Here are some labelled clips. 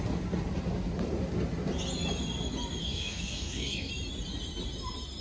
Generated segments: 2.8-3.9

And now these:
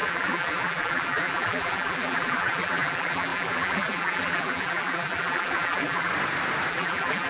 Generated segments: 0.0-6.1; 6.7-7.3